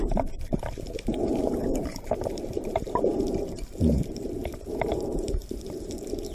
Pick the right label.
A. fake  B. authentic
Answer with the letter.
A